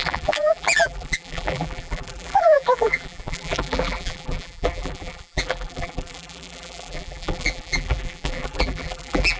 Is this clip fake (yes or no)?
yes